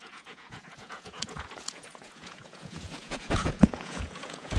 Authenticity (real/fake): fake